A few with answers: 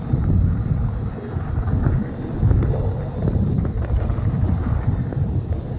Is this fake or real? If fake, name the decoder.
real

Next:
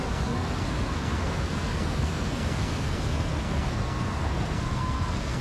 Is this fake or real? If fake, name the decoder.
fake, codec, SNAC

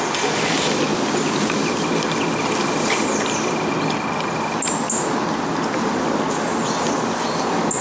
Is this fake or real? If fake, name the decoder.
real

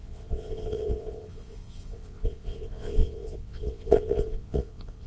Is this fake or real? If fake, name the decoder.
fake, vocoder, WaveNeXt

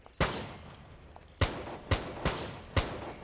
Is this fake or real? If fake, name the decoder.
real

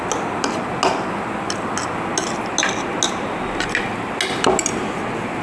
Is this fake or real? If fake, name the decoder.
real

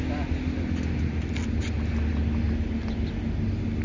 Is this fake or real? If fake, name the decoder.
real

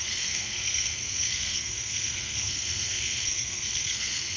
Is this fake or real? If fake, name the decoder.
fake, codec, SNAC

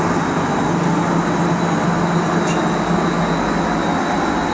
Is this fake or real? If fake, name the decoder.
real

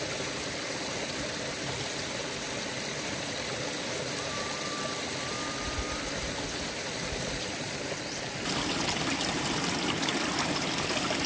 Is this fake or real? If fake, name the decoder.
real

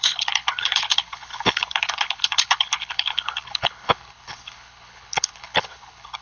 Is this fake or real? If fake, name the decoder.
fake, codec, HILCodec